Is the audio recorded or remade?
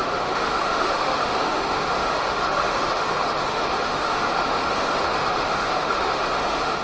remade